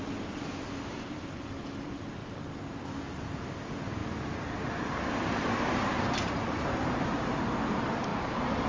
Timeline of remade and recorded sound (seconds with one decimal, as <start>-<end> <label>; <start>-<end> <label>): 0.0-4.0 recorded; 4.0-7.4 remade; 7.4-8.1 recorded; 8.1-8.7 remade